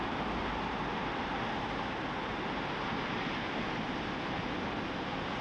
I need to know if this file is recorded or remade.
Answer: recorded